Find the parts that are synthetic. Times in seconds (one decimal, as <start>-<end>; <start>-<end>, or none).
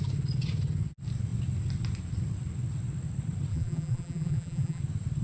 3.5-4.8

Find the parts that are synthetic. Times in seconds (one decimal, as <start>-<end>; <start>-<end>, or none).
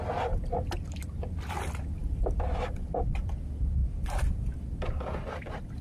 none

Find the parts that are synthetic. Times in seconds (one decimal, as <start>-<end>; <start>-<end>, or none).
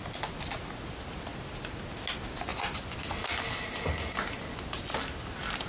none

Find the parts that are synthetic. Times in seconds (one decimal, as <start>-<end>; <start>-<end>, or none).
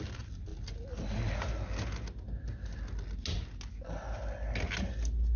none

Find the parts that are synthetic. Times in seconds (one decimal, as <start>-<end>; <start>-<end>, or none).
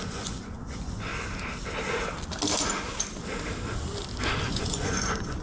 0.0-1.1; 4.3-5.4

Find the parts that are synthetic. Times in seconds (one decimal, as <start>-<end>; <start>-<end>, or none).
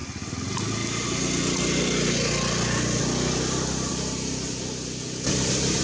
none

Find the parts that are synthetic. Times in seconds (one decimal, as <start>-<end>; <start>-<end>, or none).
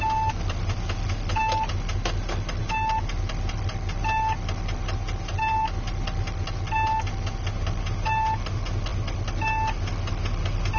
none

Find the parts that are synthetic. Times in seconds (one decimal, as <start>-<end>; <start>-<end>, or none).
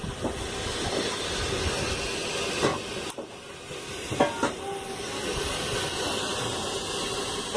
none